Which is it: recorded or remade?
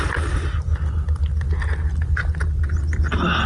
recorded